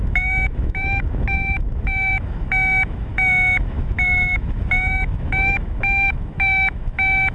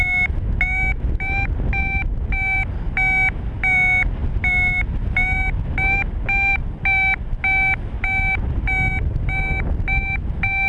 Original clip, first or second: second